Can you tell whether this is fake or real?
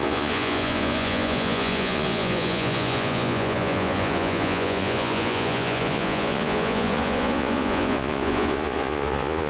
fake